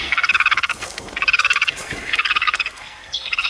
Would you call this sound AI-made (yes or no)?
yes